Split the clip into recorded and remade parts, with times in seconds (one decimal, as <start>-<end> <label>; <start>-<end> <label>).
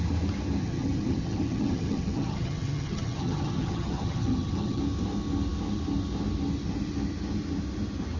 0.0-0.6 recorded; 0.6-4.8 remade; 4.8-8.2 recorded